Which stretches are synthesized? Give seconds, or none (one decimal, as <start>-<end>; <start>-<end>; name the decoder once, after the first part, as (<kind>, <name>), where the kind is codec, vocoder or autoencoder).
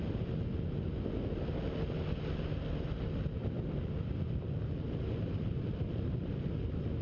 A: 3.4-6.3 (vocoder, BigVGAN v2)